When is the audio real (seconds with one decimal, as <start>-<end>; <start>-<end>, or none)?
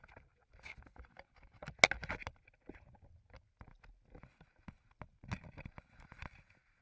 0.0-6.8